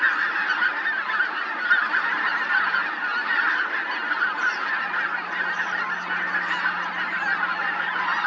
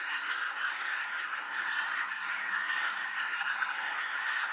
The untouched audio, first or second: first